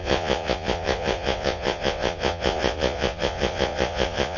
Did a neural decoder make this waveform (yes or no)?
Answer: yes